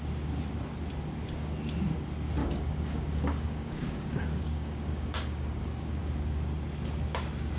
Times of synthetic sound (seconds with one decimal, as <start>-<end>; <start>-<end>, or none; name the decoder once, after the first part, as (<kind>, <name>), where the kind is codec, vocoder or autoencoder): 2.4-6.0 (codec, DAC)